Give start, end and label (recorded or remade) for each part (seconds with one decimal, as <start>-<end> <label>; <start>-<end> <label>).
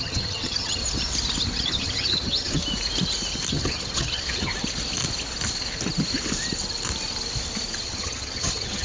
0.0-0.8 remade; 0.8-1.6 recorded; 1.6-2.6 remade; 2.6-3.5 recorded; 3.5-4.5 remade; 4.5-7.8 recorded; 7.8-8.8 remade